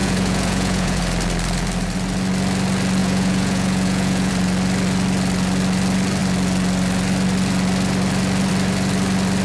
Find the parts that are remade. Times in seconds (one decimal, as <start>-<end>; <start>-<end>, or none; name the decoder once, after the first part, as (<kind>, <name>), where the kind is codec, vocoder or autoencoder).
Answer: 0.0-1.0 (vocoder, Vocos); 3.0-4.3